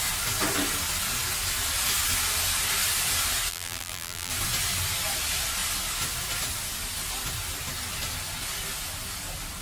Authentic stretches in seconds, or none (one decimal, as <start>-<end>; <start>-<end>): 0.0-3.5; 4.3-9.6